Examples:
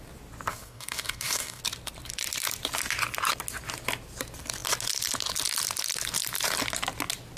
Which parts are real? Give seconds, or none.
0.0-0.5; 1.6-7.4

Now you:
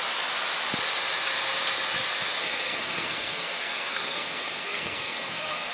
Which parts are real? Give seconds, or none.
0.0-2.4

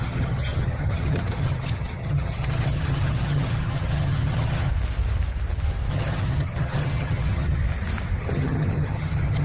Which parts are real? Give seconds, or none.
4.7-5.9; 7.6-8.2

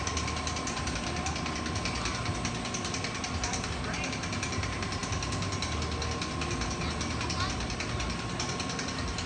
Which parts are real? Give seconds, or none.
0.0-9.3

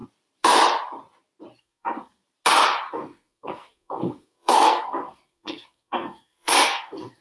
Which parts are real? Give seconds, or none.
0.0-1.6; 2.2-2.9

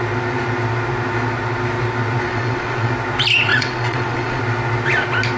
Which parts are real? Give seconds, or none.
0.0-2.3; 2.9-3.5; 4.4-5.4